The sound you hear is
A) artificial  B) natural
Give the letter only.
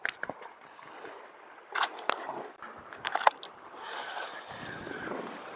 B